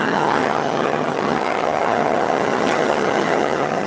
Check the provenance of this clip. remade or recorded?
remade